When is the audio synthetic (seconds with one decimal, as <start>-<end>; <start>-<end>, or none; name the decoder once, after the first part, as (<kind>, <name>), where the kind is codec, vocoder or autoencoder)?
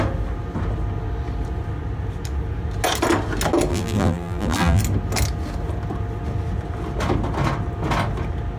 3.7-4.8 (vocoder, BigVGAN v2)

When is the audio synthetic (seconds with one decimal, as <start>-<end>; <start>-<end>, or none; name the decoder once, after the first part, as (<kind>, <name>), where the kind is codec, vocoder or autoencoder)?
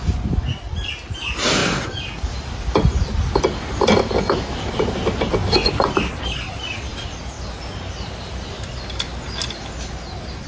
none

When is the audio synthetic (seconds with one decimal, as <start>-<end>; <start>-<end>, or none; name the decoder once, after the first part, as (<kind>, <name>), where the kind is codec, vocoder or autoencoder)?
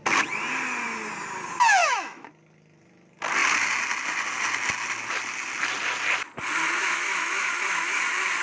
1.8-2.3 (autoencoder, DAC-VAE); 6.8-8.0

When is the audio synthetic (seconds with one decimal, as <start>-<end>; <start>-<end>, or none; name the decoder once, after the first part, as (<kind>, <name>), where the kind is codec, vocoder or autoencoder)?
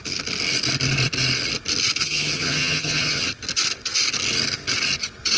2.0-3.2 (vocoder, HiFi-GAN)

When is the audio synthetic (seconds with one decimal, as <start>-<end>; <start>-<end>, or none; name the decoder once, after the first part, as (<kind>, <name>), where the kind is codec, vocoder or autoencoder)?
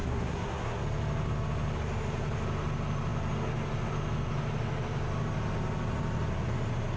0.0-0.8 (codec, SNAC)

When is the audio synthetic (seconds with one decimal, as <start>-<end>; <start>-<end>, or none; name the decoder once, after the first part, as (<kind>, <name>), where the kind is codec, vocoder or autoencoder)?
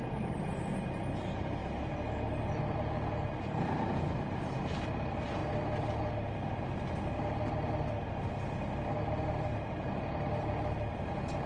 none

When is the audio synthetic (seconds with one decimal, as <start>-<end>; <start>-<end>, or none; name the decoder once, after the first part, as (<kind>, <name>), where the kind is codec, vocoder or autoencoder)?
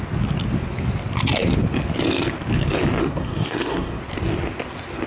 3.0-4.0 (codec, SNAC)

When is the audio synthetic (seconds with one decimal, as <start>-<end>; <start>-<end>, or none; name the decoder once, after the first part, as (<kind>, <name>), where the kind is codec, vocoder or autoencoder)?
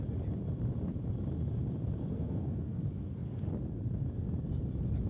2.1-2.8 (codec, SNAC)